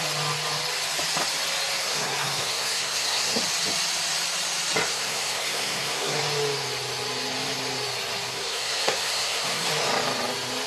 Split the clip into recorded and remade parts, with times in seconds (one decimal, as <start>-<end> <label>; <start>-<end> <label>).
0.0-1.8 recorded; 1.8-3.4 remade; 3.4-4.9 recorded; 4.9-6.2 remade; 6.2-8.3 recorded; 8.3-9.7 remade; 9.7-10.7 recorded